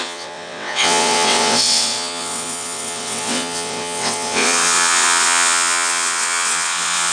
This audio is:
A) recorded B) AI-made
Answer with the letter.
B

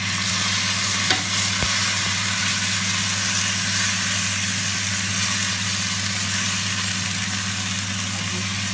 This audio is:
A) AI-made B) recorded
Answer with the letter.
B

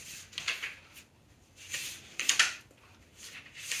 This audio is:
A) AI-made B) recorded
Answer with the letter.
B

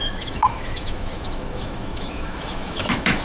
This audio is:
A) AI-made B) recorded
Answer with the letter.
A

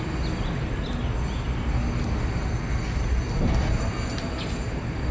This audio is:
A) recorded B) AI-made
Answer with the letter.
A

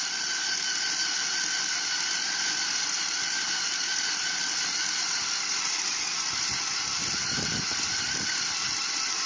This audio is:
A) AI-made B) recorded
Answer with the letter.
B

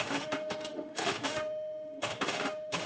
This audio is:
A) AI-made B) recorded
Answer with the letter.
A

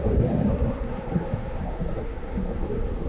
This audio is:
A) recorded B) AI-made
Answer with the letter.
B